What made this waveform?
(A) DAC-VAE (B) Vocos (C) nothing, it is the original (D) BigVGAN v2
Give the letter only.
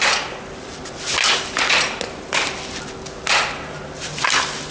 C